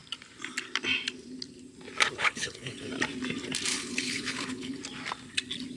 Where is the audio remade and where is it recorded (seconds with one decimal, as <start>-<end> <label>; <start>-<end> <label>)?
0.0-2.2 recorded; 2.2-2.9 remade; 2.9-3.7 recorded; 3.7-4.8 remade; 4.8-5.8 recorded